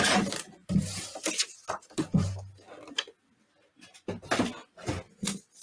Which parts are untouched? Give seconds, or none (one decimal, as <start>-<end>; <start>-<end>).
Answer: 0.0-5.6

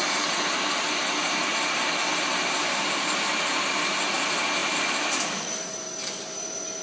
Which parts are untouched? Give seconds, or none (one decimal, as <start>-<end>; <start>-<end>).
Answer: 0.0-6.8

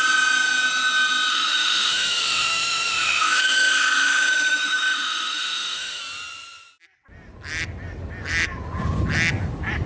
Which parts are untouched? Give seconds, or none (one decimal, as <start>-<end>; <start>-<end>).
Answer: 0.0-1.3; 6.0-9.9

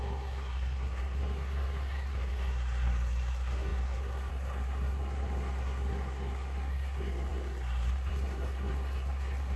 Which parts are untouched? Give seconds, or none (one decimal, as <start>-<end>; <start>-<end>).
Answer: none